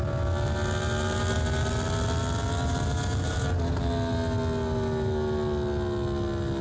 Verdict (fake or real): real